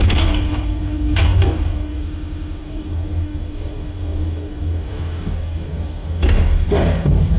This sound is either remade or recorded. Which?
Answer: remade